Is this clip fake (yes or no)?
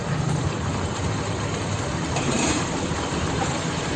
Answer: yes